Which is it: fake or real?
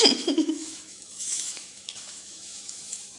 fake